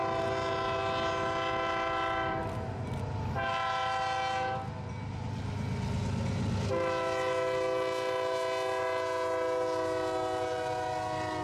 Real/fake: real